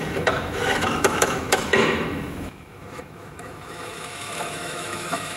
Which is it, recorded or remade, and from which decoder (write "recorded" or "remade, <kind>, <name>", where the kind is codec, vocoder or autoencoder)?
remade, autoencoder, DAC-VAE